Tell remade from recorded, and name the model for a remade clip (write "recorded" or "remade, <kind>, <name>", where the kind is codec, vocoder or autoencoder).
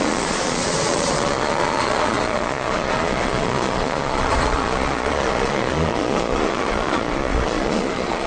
remade, vocoder, Vocos